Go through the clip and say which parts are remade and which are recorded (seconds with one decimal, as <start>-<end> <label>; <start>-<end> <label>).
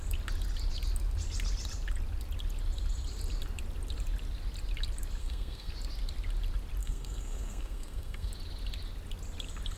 0.0-5.2 recorded; 5.2-5.7 remade; 5.7-6.8 recorded; 6.8-8.3 remade; 8.3-9.8 recorded